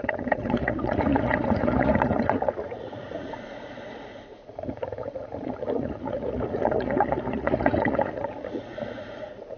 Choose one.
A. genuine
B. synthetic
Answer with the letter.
B